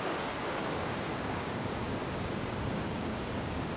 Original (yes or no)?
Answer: no